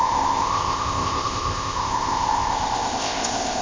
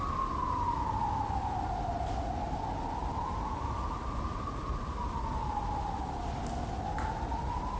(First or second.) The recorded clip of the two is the second